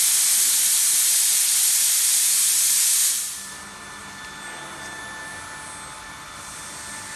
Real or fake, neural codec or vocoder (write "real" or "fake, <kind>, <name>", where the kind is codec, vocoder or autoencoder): real